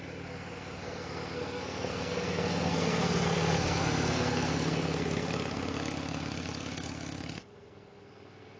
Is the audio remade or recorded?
remade